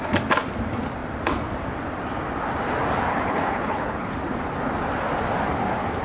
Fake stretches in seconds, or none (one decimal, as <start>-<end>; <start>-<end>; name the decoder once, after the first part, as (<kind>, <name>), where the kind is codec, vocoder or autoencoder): 3.1-4.1 (codec, HILCodec)